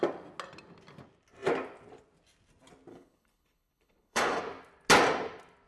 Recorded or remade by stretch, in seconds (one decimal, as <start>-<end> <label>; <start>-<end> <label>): 0.0-2.9 recorded; 2.9-4.4 remade; 4.4-5.7 recorded